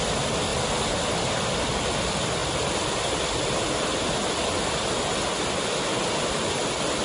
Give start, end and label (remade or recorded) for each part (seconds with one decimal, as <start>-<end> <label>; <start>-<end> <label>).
0.0-7.0 recorded